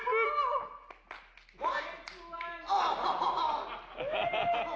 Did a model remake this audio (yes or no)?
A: no